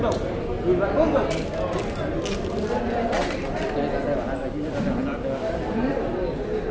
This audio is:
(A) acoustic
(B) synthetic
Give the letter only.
A